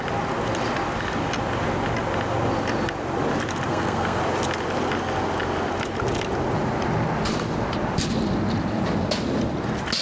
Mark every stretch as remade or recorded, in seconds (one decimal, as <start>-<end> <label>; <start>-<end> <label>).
0.0-3.7 recorded; 3.7-4.2 remade; 4.2-10.0 recorded